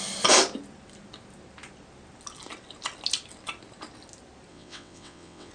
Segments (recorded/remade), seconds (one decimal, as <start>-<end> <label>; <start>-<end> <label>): 0.0-4.5 recorded; 4.5-5.5 remade